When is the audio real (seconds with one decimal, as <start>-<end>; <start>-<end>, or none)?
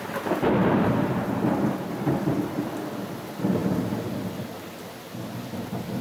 0.0-6.0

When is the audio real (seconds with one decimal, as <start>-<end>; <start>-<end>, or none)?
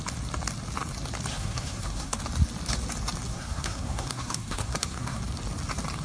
0.0-1.3; 2.2-3.3; 5.2-6.0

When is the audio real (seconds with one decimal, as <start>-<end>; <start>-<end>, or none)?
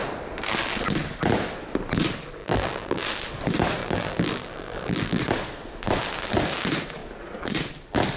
0.0-2.4; 3.1-3.8; 5.2-8.2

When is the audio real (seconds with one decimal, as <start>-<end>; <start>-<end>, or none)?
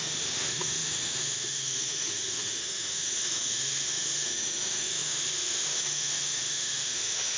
none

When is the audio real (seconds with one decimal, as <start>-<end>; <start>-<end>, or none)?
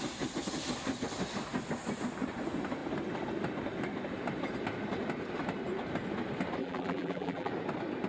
0.0-6.6; 7.5-8.1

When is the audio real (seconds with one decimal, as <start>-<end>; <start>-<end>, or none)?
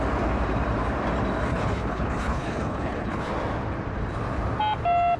0.0-1.5; 3.3-5.2